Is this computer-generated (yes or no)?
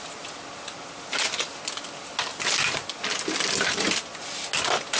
no